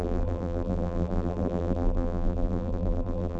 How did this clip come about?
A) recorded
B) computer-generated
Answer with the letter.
B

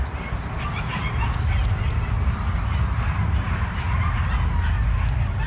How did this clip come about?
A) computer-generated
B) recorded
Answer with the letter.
B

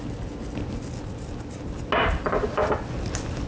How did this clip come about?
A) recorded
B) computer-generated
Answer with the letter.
A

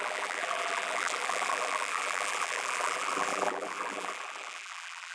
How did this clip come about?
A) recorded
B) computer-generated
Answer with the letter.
B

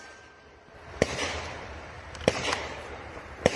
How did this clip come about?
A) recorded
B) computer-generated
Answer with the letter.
B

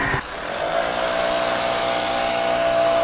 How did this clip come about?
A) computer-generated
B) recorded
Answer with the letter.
B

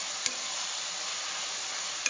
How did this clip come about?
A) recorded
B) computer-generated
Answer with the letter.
A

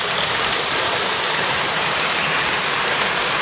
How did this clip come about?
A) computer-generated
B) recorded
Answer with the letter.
A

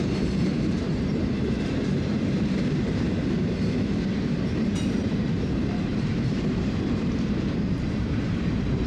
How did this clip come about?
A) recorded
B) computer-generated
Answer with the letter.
B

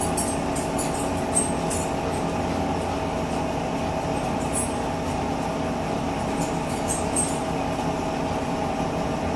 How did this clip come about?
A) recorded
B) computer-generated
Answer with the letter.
A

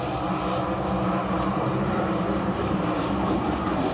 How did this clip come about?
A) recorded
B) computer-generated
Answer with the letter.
B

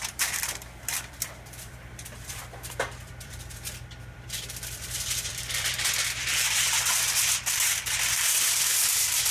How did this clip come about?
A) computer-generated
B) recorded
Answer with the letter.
A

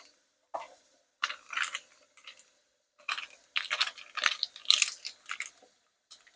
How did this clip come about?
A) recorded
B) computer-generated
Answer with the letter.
A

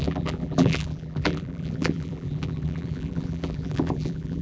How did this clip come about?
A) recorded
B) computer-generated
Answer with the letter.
B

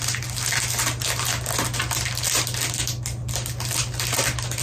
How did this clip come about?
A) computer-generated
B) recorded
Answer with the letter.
B